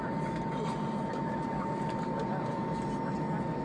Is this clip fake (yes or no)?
no